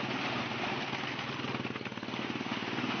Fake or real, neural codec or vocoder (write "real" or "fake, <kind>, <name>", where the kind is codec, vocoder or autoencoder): real